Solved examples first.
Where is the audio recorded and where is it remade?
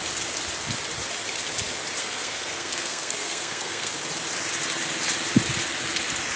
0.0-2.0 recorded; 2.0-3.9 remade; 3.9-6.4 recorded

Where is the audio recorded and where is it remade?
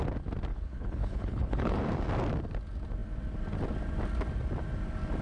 0.0-0.5 recorded; 0.5-1.8 remade; 1.8-5.2 recorded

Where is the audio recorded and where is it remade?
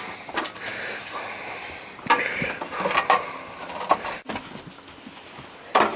0.0-6.0 recorded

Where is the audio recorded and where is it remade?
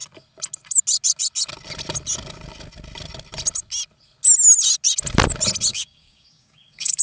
0.0-5.7 recorded; 5.7-7.0 remade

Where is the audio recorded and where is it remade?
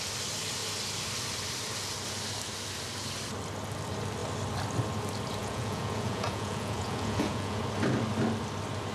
0.0-5.4 recorded; 5.4-7.6 remade; 7.6-8.9 recorded